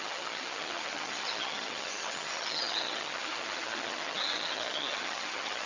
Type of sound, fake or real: fake